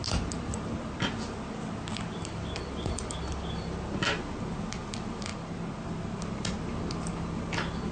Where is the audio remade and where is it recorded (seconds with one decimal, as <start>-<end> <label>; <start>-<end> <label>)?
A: 0.0-7.9 recorded